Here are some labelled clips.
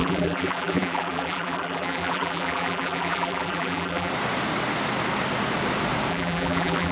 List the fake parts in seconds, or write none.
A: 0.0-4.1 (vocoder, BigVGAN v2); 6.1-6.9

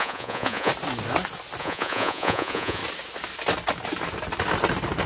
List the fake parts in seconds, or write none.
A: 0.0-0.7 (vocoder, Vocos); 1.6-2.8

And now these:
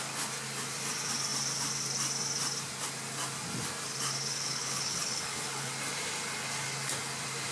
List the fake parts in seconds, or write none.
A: 4.2-5.7 (codec, HILCodec)

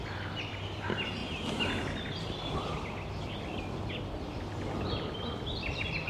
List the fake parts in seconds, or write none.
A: 0.0-0.5 (vocoder, BigVGAN v2); 1.2-3.2

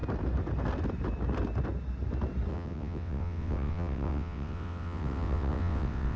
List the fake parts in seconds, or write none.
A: 2.5-6.2 (vocoder, WaveNeXt)

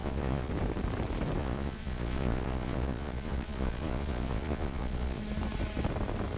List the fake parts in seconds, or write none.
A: 0.0-0.5 (vocoder, Vocos); 1.4-5.2